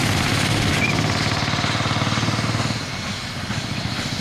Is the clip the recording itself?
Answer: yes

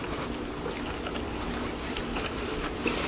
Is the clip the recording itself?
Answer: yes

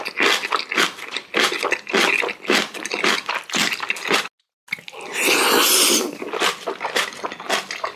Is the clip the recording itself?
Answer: yes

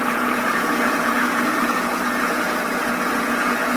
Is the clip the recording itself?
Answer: no